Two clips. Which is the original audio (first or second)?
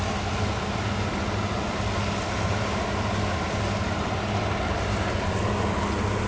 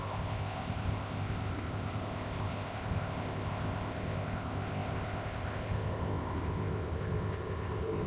first